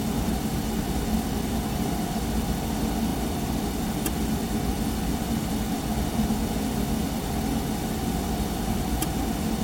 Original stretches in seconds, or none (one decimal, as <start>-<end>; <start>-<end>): 0.0-9.6